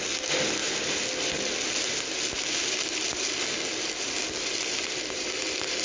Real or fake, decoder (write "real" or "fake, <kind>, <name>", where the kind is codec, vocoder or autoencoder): real